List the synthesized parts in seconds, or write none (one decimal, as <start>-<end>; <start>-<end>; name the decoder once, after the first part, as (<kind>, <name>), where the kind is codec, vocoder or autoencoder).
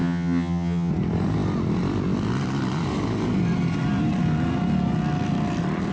0.0-0.9 (vocoder, HiFi-GAN)